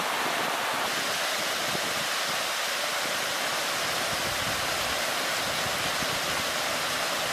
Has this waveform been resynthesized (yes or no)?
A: no